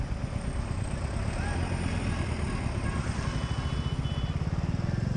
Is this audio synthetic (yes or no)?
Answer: no